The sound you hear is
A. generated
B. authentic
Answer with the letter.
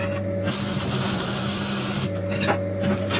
B